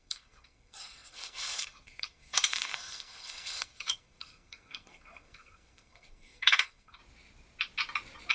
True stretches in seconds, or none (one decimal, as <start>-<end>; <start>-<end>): 7.0-8.3